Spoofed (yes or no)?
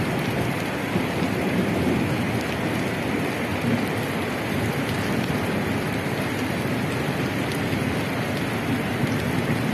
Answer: no